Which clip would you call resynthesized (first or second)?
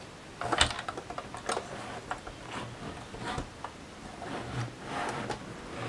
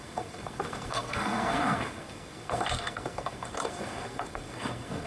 second